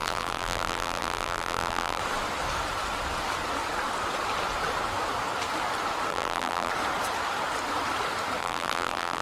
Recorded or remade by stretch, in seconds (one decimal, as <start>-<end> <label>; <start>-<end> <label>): 0.0-2.0 remade; 2.0-6.1 recorded; 6.1-6.7 remade; 6.7-8.4 recorded; 8.4-9.2 remade